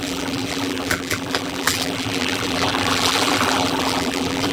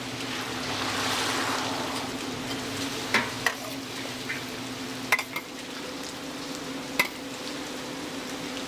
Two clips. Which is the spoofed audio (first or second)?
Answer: first